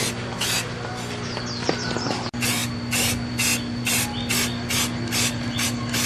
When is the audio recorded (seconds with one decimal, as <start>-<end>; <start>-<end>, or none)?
0.0-6.1